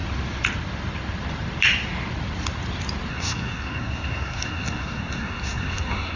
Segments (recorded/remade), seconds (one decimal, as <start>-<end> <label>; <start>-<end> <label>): 0.0-3.1 recorded; 3.1-6.2 remade